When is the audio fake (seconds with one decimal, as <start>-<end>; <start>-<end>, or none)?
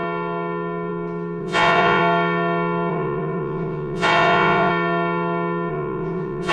1.4-2.0; 2.9-4.7; 5.7-6.5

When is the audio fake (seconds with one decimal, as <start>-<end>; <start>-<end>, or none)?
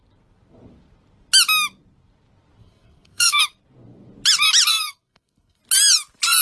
2.6-3.4; 4.7-5.6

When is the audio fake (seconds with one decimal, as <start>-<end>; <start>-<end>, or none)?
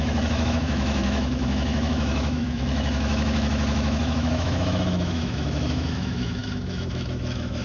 0.0-7.6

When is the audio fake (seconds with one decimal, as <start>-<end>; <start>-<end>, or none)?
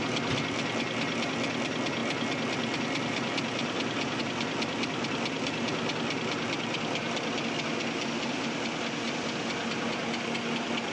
none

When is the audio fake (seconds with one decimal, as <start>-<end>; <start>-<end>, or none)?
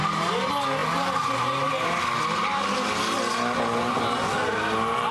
none